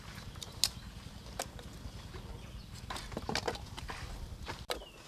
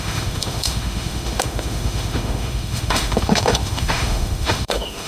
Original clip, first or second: first